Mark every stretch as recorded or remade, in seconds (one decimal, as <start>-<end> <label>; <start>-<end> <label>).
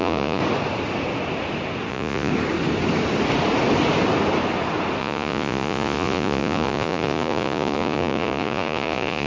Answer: 0.0-0.4 remade; 0.4-1.9 recorded; 1.9-2.3 remade; 2.3-5.0 recorded; 5.0-9.3 remade